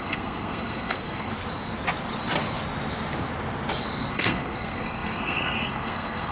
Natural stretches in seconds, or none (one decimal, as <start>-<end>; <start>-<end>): 1.3-4.1